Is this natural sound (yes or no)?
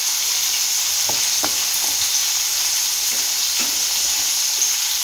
yes